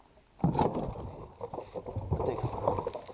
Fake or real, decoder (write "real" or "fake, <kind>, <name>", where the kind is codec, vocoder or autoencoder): real